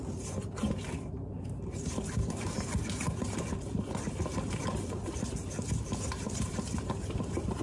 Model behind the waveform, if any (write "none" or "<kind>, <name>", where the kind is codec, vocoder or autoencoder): vocoder, BigVGAN v2